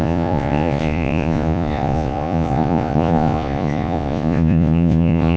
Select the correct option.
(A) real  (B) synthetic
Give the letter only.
B